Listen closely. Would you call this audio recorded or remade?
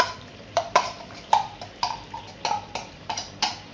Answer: remade